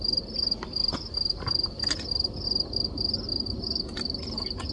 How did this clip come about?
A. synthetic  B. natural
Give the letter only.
B